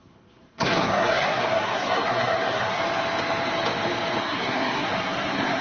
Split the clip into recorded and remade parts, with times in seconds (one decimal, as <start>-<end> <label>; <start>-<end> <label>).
0.0-2.8 remade; 2.8-4.2 recorded; 4.2-5.6 remade